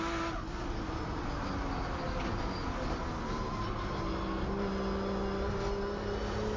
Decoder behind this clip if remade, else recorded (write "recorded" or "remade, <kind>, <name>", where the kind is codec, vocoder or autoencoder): recorded